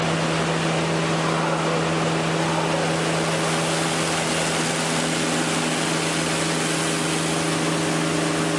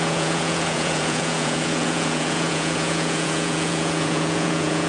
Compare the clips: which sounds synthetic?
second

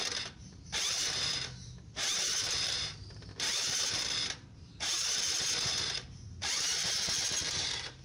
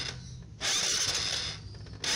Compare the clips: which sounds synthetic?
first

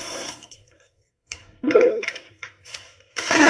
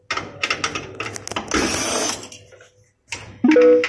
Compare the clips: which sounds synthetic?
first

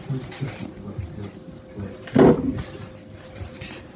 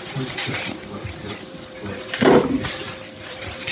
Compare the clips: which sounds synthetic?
second